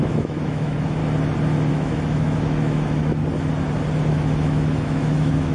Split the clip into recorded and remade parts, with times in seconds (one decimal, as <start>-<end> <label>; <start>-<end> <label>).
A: 0.0-1.0 remade; 1.0-1.7 recorded; 1.7-3.2 remade; 3.2-4.1 recorded; 4.1-5.5 remade